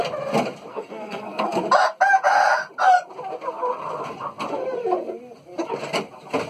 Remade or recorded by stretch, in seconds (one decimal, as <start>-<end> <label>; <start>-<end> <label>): 0.0-0.7 recorded; 0.7-1.6 remade; 1.6-6.5 recorded